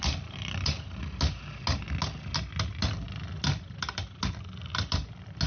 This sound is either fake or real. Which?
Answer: real